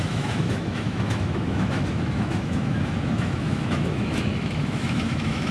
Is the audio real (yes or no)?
no